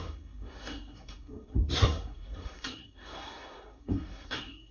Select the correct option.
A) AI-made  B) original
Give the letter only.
A